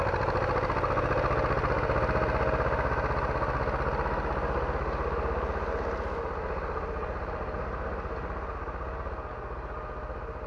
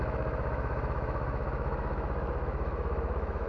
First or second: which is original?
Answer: first